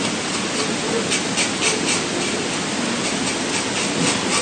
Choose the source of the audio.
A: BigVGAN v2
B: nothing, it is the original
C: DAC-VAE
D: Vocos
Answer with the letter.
B